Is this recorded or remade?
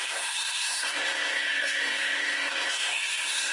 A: remade